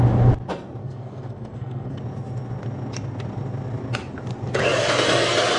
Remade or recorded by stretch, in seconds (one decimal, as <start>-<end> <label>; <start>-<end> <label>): 0.0-0.8 recorded; 0.8-2.0 remade; 2.0-5.6 recorded